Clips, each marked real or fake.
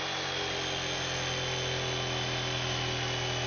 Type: real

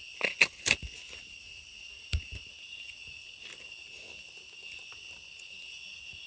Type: real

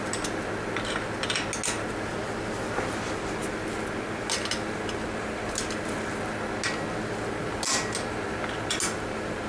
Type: real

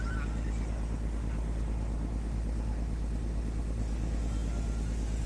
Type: real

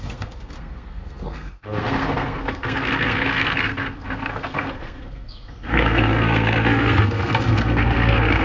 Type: fake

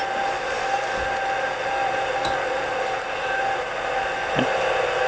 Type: real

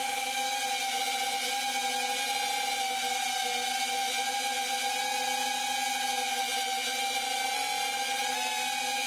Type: real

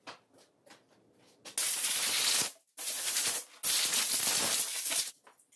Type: real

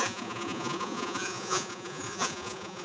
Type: fake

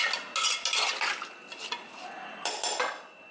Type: real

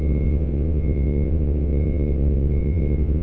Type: fake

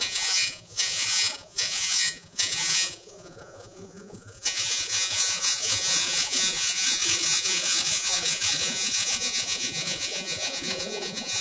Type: fake